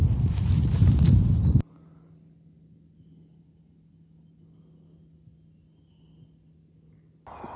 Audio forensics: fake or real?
real